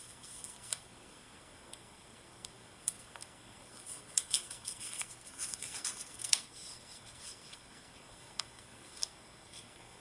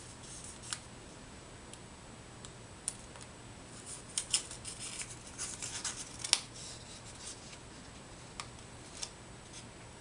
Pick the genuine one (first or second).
second